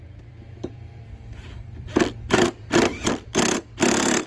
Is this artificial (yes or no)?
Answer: yes